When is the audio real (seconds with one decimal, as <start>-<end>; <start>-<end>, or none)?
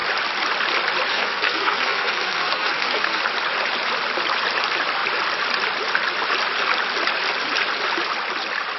0.0-1.1; 3.2-8.8